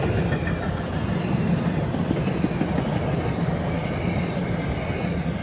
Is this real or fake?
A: fake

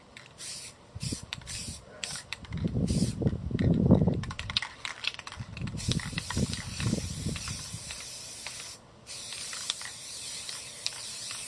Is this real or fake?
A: fake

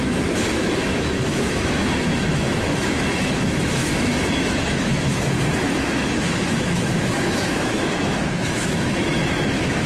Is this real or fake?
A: fake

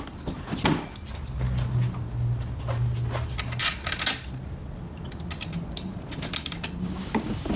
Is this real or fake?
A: real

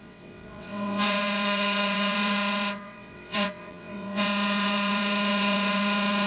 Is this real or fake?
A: fake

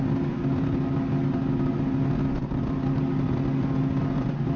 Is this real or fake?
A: real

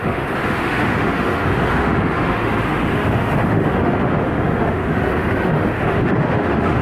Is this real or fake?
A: fake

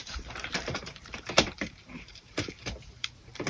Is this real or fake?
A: fake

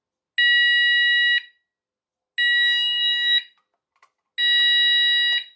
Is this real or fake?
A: real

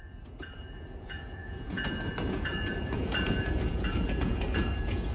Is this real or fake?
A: fake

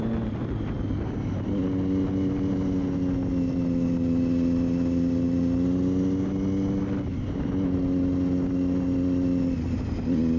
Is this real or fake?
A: real